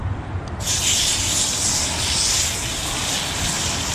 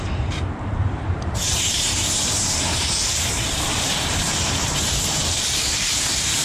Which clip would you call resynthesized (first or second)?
second